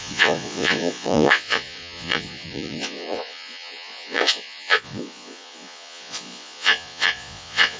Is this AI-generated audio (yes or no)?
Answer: yes